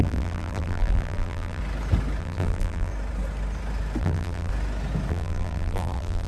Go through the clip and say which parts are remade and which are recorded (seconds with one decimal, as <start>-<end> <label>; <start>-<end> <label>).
0.0-1.6 remade; 1.6-2.2 recorded; 2.2-2.9 remade; 2.9-4.0 recorded; 4.0-4.5 remade; 4.5-5.1 recorded; 5.1-6.3 remade